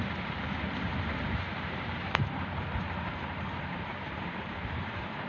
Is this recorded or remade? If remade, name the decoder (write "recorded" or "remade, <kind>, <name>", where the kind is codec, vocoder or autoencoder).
remade, vocoder, BigVGAN v2